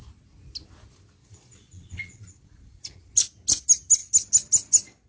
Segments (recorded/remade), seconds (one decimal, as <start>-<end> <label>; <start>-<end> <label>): 0.0-1.2 recorded; 1.2-3.1 remade; 3.1-5.1 recorded